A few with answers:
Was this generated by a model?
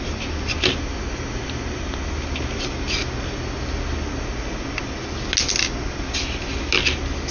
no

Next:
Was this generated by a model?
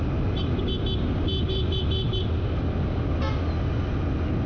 no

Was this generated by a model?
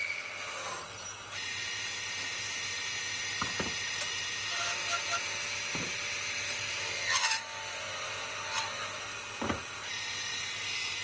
no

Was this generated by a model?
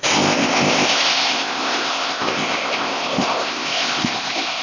yes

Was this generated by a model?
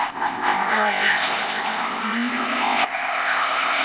yes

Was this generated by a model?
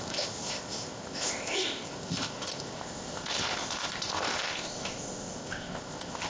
yes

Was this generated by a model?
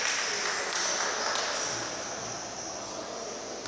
no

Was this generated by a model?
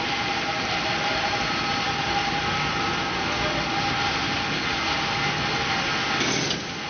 no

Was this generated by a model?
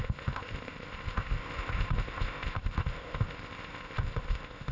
yes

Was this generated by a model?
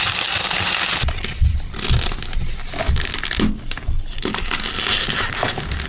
no